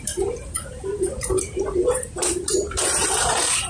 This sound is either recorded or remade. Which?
remade